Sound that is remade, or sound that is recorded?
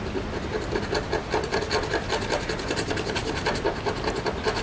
recorded